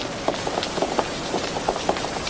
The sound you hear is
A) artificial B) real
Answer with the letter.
A